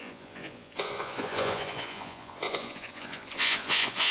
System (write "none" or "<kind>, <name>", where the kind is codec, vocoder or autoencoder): vocoder, Vocos